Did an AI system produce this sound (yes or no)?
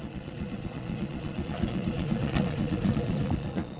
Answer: yes